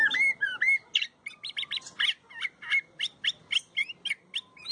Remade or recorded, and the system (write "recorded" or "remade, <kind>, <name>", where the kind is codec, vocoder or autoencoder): recorded